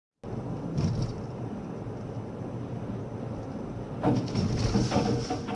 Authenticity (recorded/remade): recorded